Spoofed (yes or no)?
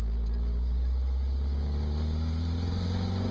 no